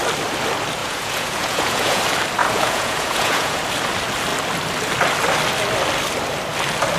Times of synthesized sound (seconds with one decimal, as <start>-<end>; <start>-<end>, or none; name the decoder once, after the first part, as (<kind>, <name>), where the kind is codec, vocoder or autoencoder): 0.8-2.0 (vocoder, Vocos); 2.4-3.6